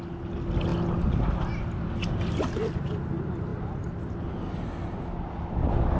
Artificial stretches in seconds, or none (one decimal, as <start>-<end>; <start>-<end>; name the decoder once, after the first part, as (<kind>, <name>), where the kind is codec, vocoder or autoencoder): none